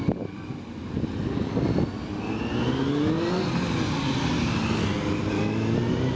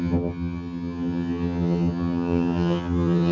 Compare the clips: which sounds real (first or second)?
first